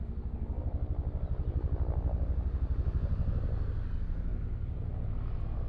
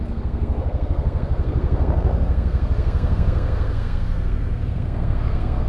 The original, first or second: first